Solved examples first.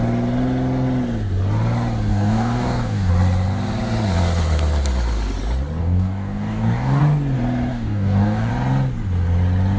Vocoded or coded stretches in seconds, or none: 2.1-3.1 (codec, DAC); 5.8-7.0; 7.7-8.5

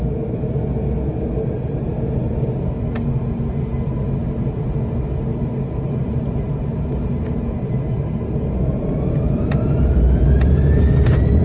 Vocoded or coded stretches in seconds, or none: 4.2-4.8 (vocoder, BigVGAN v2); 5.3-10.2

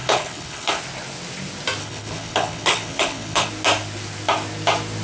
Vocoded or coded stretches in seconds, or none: 0.0-0.8 (codec, HILCodec); 1.8-3.5

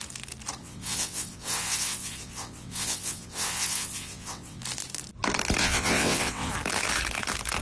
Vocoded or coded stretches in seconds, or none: 0.6-4.6 (vocoder, WaveNeXt); 5.6-6.5

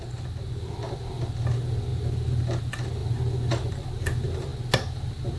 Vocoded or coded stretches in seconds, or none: none

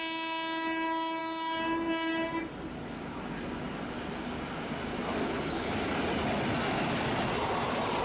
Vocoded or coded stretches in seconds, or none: 5.2-5.7 (codec, HILCodec)

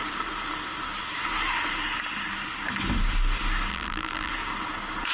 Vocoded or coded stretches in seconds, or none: 3.7-4.3 (vocoder, BigVGAN v2)